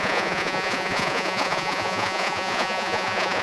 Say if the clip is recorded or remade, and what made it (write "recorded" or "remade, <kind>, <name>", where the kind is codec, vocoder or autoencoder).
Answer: remade, vocoder, Vocos